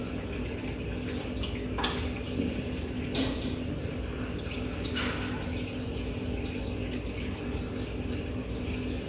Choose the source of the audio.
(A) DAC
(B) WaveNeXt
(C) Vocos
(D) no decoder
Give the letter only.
D